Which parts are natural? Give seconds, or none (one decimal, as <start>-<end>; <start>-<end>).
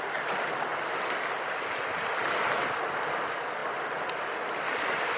0.0-5.2